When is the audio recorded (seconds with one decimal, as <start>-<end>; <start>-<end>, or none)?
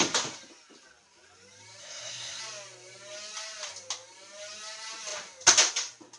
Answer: 0.0-1.8; 2.4-6.2